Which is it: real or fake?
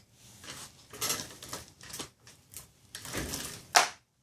real